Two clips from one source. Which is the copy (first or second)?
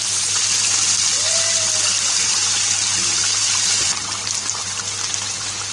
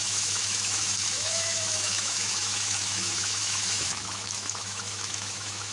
second